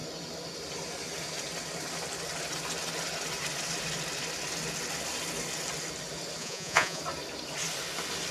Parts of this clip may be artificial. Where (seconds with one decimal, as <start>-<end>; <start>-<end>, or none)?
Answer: 6.4-7.0